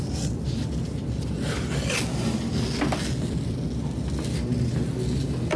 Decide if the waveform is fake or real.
real